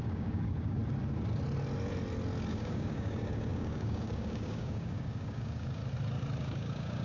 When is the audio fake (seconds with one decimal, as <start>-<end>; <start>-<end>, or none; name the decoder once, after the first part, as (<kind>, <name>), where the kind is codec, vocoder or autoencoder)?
0.0-0.8 (codec, DAC); 2.5-5.8; 6.4-7.0